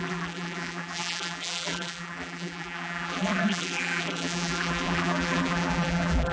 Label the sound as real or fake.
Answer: fake